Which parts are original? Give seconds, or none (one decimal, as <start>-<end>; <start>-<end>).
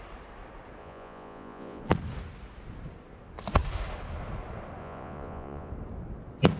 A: 0.0-0.8; 1.8-4.8; 5.7-6.6